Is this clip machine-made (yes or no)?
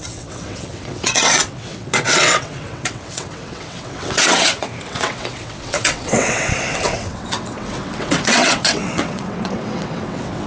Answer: yes